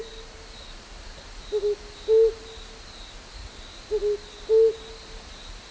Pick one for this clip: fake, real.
real